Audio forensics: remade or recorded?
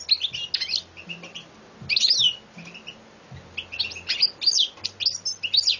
recorded